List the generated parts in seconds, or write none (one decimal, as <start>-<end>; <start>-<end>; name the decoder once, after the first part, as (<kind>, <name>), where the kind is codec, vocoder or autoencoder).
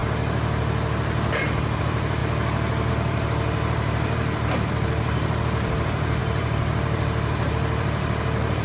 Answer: 1.8-2.2 (vocoder, BigVGAN v2); 2.9-8.6